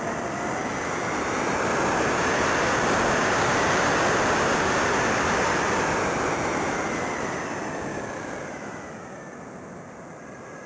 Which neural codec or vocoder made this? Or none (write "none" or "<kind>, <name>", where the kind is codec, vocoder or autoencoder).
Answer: none